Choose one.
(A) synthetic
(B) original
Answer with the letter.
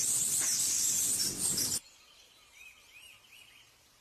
B